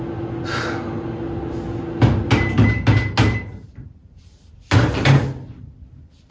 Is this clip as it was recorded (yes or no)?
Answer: yes